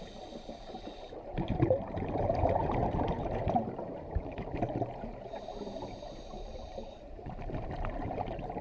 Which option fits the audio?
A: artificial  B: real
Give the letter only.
A